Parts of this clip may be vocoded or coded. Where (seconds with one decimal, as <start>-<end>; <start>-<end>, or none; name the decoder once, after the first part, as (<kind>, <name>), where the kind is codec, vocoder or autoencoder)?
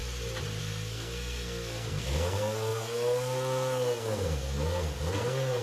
0.6-5.6 (codec, SNAC)